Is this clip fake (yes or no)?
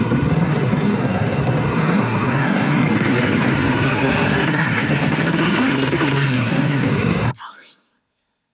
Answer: yes